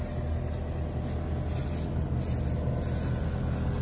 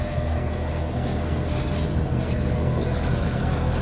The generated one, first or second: second